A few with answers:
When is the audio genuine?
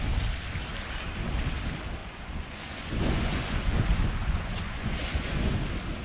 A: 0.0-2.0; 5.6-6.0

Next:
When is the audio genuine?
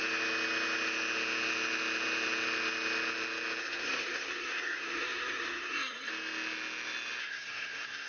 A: 0.0-3.6; 6.1-7.2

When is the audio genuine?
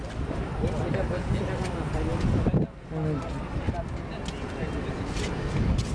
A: 0.0-5.9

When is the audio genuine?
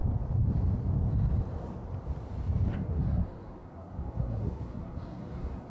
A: 0.0-2.9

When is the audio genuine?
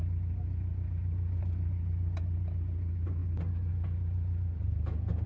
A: 0.0-5.3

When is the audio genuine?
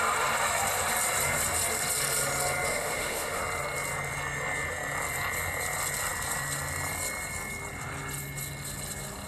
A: 0.0-2.7; 3.4-9.3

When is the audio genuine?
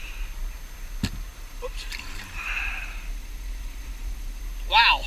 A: 0.0-1.3; 4.4-5.1